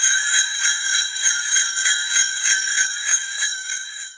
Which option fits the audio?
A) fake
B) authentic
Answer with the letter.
A